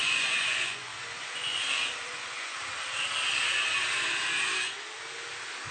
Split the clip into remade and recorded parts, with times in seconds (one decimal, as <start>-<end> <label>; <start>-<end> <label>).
0.0-2.6 remade; 2.6-5.7 recorded